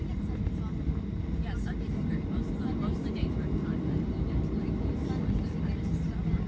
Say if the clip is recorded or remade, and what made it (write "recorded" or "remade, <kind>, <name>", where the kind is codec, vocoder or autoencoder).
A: recorded